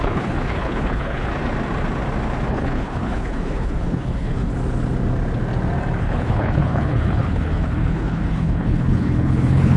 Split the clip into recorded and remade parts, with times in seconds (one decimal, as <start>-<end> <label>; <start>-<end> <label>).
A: 0.0-1.3 remade; 1.3-2.5 recorded; 2.5-4.5 remade; 4.5-6.0 recorded; 6.0-9.8 remade